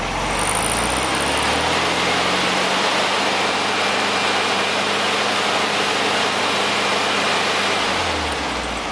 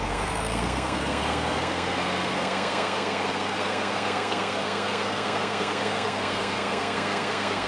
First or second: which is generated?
second